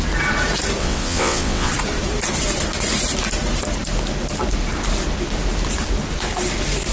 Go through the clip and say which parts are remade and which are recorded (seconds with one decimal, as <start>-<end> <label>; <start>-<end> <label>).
0.0-0.8 recorded; 0.8-1.7 remade; 1.7-6.9 recorded